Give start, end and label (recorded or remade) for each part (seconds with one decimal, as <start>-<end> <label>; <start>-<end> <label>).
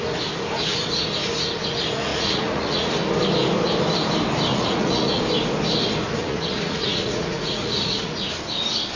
0.0-2.1 recorded; 2.1-2.9 remade; 2.9-4.5 recorded; 4.5-5.2 remade; 5.2-6.2 recorded; 6.2-8.3 remade; 8.3-9.0 recorded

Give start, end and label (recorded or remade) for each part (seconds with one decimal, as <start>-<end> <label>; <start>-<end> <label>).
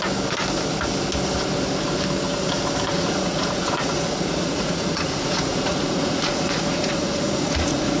0.0-2.9 recorded; 2.9-8.0 remade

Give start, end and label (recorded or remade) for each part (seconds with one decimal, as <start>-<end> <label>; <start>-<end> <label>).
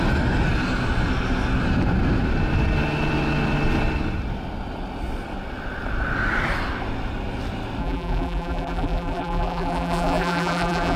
0.0-7.8 recorded; 7.8-11.0 remade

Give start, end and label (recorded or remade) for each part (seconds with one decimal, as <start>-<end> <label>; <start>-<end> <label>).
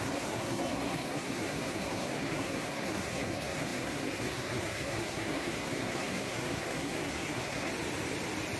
0.0-7.7 remade; 7.7-8.6 recorded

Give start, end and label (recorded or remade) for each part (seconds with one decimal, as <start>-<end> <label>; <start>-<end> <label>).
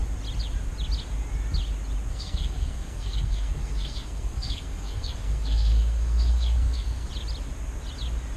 0.0-2.1 recorded; 2.1-7.1 remade; 7.1-8.4 recorded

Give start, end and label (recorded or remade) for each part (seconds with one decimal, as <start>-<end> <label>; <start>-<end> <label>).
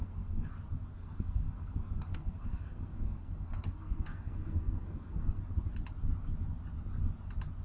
0.0-0.5 remade; 0.5-1.0 recorded; 1.0-5.4 remade; 5.4-7.6 recorded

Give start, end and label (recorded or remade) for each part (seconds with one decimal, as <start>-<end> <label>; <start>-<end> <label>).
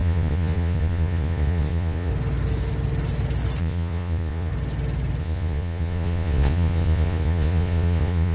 0.0-2.1 remade; 2.1-3.6 recorded; 3.6-4.5 remade; 4.5-5.2 recorded; 5.2-8.3 remade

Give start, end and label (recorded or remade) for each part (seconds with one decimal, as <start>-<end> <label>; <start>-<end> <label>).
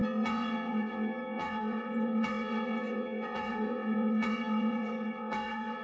0.0-5.8 remade